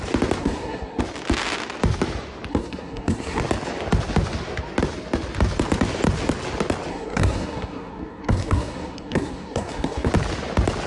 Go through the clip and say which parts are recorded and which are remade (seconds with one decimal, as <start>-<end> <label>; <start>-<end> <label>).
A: 0.0-0.4 recorded; 0.4-1.0 remade; 1.0-2.5 recorded; 2.5-3.4 remade; 3.4-6.9 recorded; 6.9-10.1 remade; 10.1-10.9 recorded